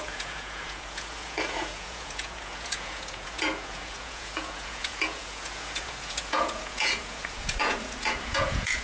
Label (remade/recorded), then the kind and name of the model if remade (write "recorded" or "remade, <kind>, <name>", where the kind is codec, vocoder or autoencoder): remade, vocoder, Vocos